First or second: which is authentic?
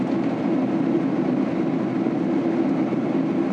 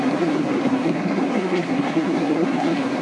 first